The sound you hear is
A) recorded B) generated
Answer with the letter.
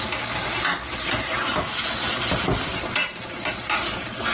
A